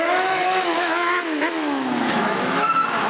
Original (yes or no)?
no